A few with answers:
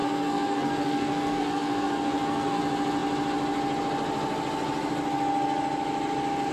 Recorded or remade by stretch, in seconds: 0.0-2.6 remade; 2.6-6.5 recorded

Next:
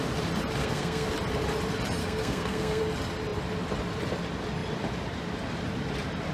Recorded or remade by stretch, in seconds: 0.0-0.6 recorded; 0.6-1.1 remade; 1.1-2.0 recorded; 2.0-2.8 remade; 2.8-6.3 recorded

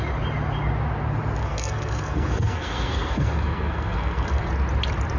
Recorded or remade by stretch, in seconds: 0.0-1.4 recorded; 1.4-4.5 remade; 4.5-5.2 recorded

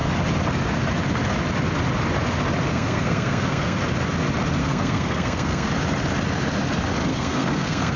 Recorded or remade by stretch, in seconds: 0.0-2.7 recorded; 2.7-3.8 remade; 3.8-4.6 recorded; 4.6-5.7 remade; 5.7-7.1 recorded; 7.1-8.0 remade

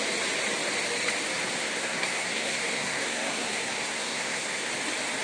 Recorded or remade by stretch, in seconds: 0.0-1.6 recorded; 1.6-4.7 remade; 4.7-5.2 recorded

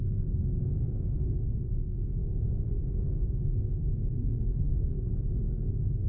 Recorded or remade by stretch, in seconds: 0.0-6.1 remade